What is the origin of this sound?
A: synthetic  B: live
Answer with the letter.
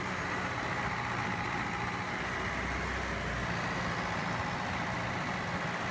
B